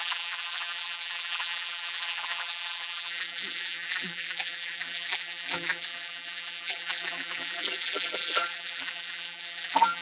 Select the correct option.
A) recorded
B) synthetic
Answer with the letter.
B